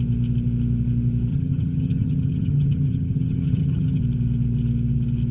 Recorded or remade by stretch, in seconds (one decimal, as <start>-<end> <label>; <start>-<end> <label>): 0.0-1.3 recorded; 1.3-4.0 remade; 4.0-5.3 recorded